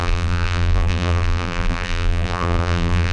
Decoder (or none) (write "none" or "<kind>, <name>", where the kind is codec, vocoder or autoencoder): vocoder, BigVGAN v2